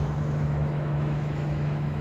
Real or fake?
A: fake